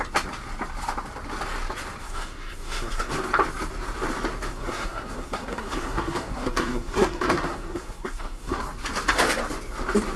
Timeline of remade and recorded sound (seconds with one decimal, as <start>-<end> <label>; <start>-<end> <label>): 0.0-2.0 recorded; 2.0-3.1 remade; 3.1-4.5 recorded; 4.5-8.6 remade; 8.6-10.2 recorded